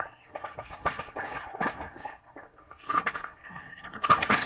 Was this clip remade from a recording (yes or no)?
yes